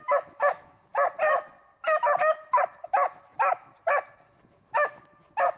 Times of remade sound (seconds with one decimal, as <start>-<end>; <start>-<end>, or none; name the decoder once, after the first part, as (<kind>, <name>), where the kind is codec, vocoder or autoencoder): 0.0-0.9 (autoencoder, DAC-VAE); 2.8-3.7; 4.4-5.6